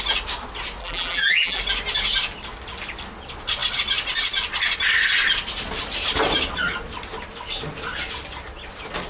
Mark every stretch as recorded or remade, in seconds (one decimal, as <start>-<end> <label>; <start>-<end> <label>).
0.0-0.8 recorded; 0.8-1.6 remade; 1.6-9.1 recorded